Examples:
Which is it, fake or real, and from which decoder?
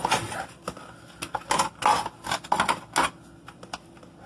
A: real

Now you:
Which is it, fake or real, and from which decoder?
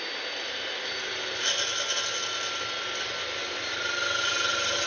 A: real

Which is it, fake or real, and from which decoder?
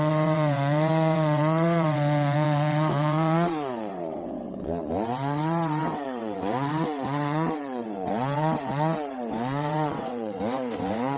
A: fake, vocoder, WaveNeXt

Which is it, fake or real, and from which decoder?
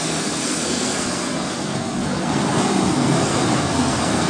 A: fake, codec, SNAC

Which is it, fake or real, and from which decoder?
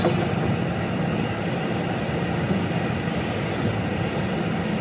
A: real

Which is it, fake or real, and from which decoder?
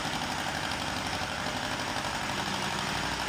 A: real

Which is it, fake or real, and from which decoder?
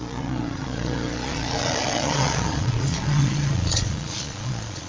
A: fake, vocoder, Vocos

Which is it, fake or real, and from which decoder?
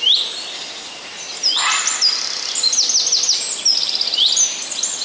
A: real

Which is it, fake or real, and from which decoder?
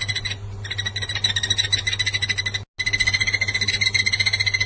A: real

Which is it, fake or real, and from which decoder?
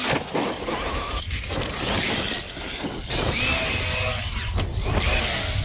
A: real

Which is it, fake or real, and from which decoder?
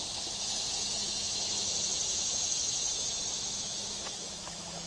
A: fake, autoencoder, DAC-VAE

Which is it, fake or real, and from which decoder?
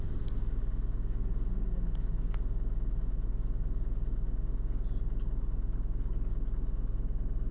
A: real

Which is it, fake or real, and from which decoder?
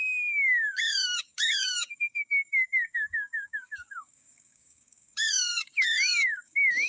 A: fake, codec, DAC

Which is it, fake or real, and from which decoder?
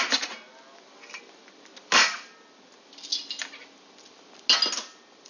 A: real